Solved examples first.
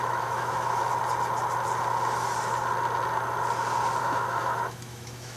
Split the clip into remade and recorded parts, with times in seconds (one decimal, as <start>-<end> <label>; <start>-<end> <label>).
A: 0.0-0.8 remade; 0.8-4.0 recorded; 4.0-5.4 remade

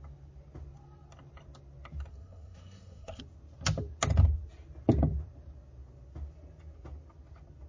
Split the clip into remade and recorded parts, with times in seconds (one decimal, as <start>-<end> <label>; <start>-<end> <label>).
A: 0.0-2.1 recorded; 2.1-3.2 remade; 3.2-7.7 recorded

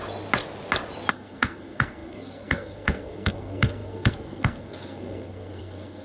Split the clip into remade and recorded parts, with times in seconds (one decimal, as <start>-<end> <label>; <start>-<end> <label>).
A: 0.0-1.1 recorded; 1.1-6.0 remade